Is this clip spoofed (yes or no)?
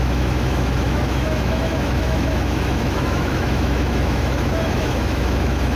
yes